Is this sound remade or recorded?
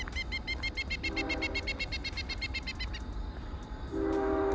recorded